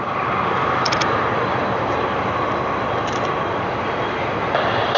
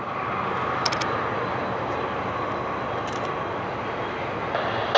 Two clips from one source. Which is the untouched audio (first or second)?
second